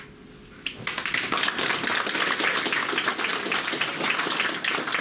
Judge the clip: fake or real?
real